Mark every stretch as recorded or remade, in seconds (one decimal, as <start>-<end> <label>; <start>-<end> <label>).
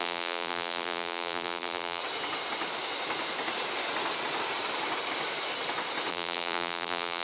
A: 0.0-2.0 remade; 2.0-6.1 recorded; 6.1-7.2 remade